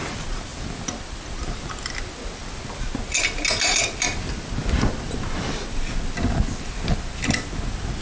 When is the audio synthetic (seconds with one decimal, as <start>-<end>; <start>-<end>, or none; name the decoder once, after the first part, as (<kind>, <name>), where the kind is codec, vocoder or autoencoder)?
none